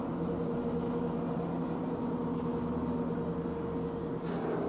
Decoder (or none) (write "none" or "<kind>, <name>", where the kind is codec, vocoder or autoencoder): none